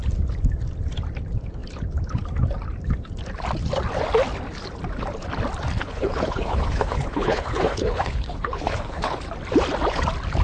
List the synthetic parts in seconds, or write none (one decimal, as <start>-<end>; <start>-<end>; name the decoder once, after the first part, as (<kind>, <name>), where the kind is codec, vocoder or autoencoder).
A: 5.8-9.2 (codec, HILCodec)